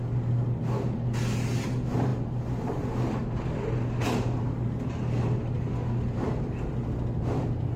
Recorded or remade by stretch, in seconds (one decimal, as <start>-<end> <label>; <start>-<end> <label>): 0.0-7.8 recorded